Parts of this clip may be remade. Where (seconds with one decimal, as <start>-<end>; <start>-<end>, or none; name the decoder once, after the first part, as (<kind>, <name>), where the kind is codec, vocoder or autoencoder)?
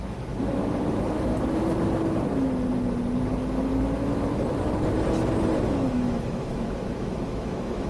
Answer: 0.0-1.3 (autoencoder, DAC-VAE); 3.8-4.3; 5.7-7.9